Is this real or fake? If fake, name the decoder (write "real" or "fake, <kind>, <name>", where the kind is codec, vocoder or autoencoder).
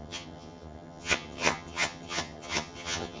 fake, vocoder, HiFi-GAN